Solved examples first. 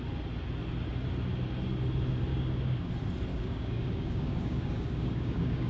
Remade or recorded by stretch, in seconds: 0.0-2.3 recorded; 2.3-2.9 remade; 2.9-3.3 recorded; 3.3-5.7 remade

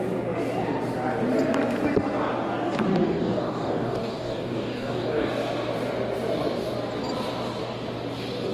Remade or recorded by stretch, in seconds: 0.0-3.0 recorded; 3.0-5.3 remade; 5.3-8.5 recorded

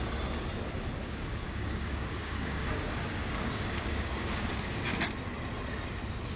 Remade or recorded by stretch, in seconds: 0.0-1.0 recorded; 1.0-4.7 remade; 4.7-6.4 recorded

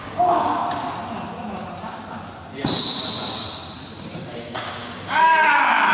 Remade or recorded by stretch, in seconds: 0.0-0.6 remade; 0.6-4.1 recorded; 4.1-5.9 remade